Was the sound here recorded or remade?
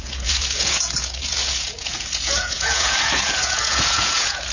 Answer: remade